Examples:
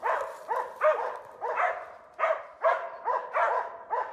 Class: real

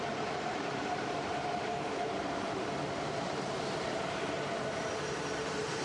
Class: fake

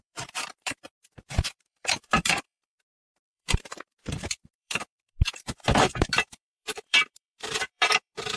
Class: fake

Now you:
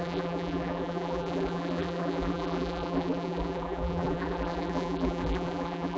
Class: fake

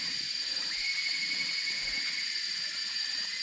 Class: fake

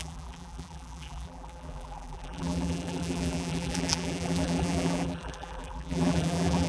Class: fake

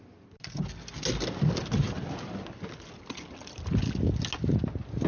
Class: real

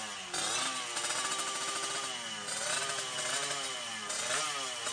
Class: real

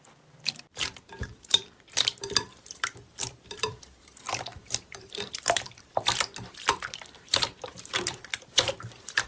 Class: fake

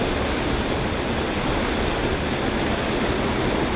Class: real